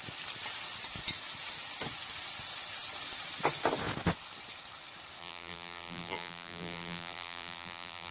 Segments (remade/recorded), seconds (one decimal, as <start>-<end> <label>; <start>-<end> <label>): 0.0-5.2 recorded; 5.2-8.1 remade